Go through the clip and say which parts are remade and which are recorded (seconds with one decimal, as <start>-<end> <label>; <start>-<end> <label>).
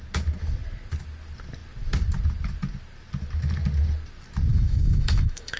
0.0-4.5 recorded; 4.5-5.6 remade